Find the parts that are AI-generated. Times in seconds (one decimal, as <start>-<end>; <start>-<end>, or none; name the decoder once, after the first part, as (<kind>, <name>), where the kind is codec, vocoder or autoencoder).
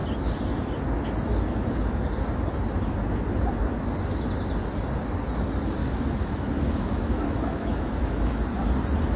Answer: 5.8-8.4 (autoencoder, DAC-VAE)